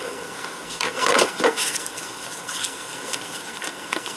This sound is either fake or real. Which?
fake